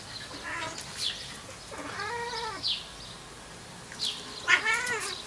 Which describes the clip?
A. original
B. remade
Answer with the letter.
A